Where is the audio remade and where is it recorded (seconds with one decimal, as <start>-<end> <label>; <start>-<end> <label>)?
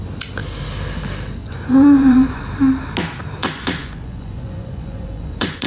0.0-1.4 recorded; 1.4-2.4 remade; 2.4-3.4 recorded; 3.4-5.7 remade